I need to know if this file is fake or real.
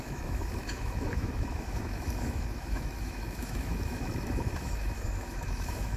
fake